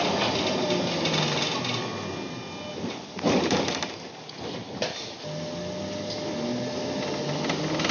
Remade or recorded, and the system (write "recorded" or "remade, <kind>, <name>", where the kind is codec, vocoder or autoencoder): recorded